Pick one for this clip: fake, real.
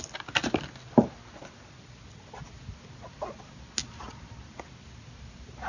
real